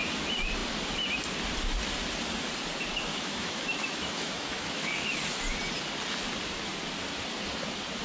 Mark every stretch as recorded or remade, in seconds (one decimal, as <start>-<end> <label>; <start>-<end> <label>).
0.0-3.1 recorded; 3.1-4.9 remade; 4.9-8.0 recorded